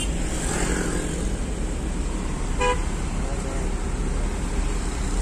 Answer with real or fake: real